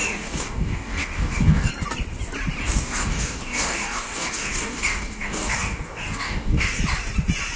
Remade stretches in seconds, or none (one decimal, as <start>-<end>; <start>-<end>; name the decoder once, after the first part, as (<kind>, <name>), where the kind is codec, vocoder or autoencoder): 0.0-1.7 (codec, DAC); 2.6-6.8